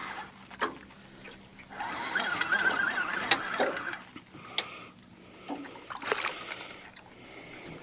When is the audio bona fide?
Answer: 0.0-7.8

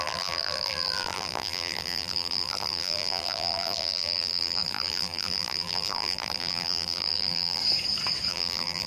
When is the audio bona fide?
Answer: 7.6-8.3

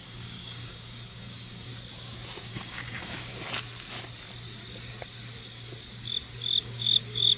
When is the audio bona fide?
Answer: 1.7-2.5; 3.3-6.6

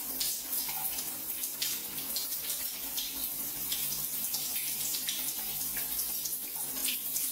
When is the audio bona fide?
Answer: 0.0-2.2; 5.0-6.8

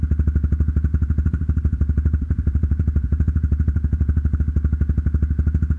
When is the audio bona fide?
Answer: 0.0-0.9; 4.4-5.8